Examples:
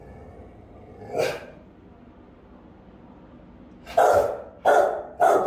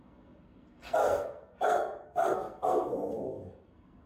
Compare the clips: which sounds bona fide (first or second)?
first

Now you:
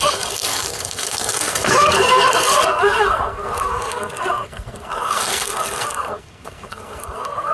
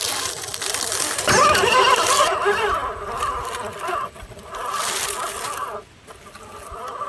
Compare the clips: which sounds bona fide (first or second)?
second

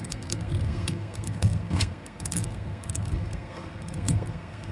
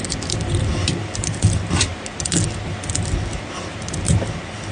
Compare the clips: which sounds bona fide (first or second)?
second